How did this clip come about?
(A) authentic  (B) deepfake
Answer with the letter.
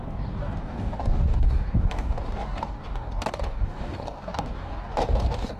B